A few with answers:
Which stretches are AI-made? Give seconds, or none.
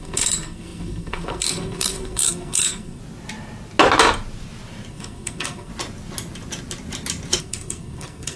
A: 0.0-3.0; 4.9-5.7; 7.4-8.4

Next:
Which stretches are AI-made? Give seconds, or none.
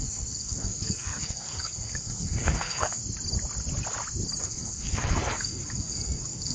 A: 0.0-3.0; 4.4-6.5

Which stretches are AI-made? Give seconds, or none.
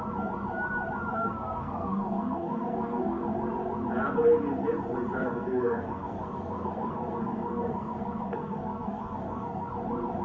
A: 1.1-3.2; 5.2-9.7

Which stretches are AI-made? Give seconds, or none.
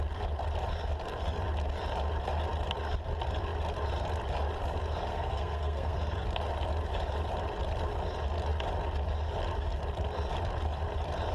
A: 5.1-6.0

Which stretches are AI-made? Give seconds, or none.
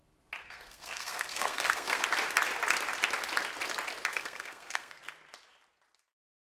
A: 0.4-2.0; 4.1-5.0